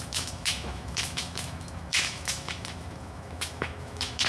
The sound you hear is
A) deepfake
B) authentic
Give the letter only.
A